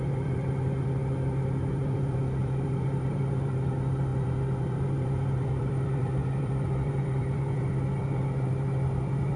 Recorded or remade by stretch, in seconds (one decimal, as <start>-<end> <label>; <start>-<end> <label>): 0.0-1.0 remade; 1.0-1.7 recorded; 1.7-9.4 remade